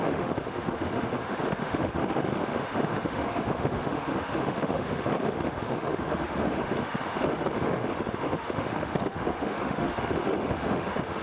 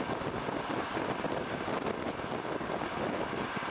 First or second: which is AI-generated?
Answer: first